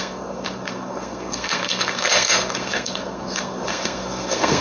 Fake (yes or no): yes